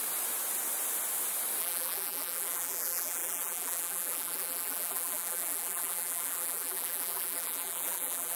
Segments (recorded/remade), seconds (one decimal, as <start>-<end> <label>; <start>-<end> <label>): 0.0-1.6 recorded; 1.6-8.4 remade